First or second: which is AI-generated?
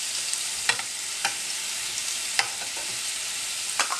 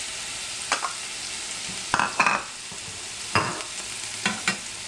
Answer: first